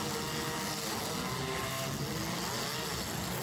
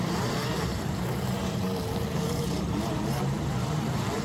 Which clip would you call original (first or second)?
first